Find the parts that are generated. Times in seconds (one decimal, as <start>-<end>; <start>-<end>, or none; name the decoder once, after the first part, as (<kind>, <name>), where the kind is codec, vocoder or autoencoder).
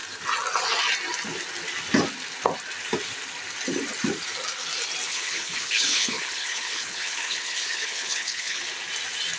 5.1-8.6 (codec, HILCodec)